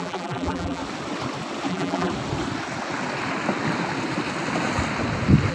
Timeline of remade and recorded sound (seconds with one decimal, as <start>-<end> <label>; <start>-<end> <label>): 0.0-0.8 remade; 0.8-1.7 recorded; 1.7-2.1 remade; 2.1-5.5 recorded